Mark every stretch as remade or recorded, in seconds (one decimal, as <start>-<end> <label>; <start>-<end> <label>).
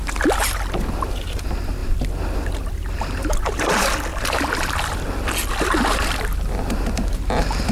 0.0-7.7 recorded